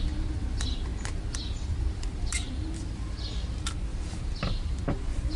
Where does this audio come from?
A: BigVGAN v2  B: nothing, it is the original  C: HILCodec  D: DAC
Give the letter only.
B